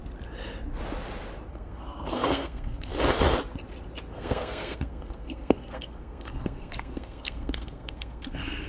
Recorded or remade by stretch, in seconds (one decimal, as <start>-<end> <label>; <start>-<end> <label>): 0.0-1.5 recorded; 1.5-2.9 remade; 2.9-4.1 recorded; 4.1-8.7 remade